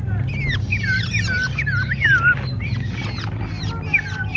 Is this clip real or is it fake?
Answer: real